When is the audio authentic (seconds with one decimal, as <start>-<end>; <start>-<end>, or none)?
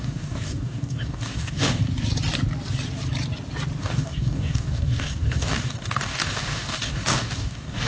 1.8-3.8